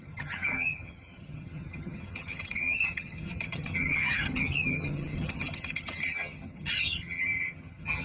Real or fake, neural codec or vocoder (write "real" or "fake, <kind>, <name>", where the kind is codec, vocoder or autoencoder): fake, vocoder, HiFi-GAN